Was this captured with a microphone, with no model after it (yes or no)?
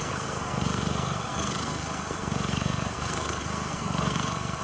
no